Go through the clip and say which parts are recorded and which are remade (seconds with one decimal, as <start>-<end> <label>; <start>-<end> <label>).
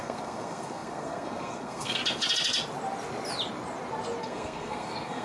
0.0-2.0 remade; 2.0-4.2 recorded; 4.2-5.2 remade